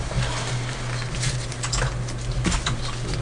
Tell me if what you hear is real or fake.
real